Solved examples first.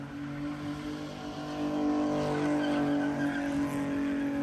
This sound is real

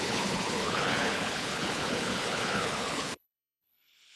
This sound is fake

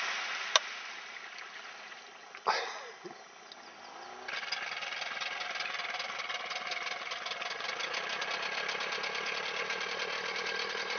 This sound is real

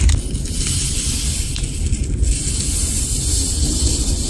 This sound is real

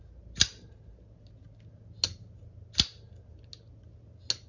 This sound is real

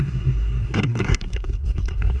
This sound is fake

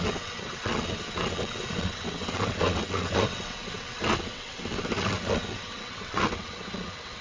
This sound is fake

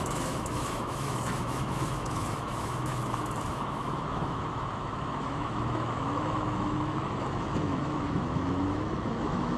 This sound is fake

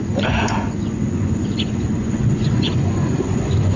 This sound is fake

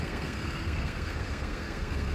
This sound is fake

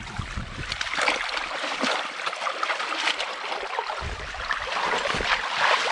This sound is real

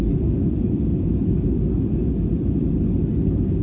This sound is real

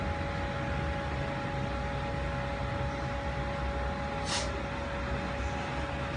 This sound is real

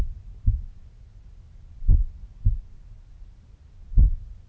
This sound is real